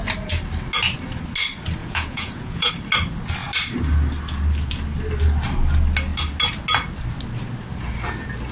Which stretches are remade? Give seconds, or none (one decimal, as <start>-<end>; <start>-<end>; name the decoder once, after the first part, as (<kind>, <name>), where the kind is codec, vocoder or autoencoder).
1.8-2.7 (vocoder, Vocos)